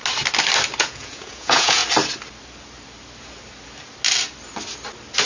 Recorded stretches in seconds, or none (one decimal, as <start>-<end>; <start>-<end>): 0.0-0.8; 1.8-5.3